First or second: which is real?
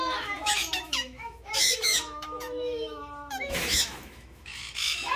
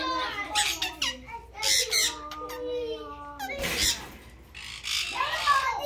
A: second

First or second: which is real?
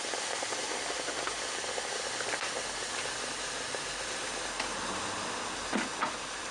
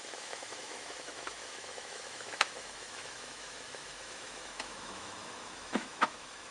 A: first